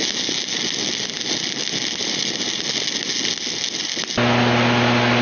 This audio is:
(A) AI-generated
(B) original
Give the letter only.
B